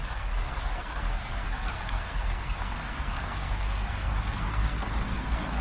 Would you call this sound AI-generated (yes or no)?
yes